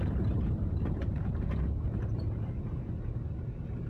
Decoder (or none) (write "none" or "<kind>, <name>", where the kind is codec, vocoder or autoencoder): vocoder, BigVGAN v2